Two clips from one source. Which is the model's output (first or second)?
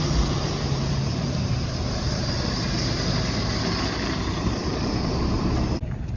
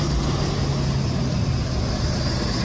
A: first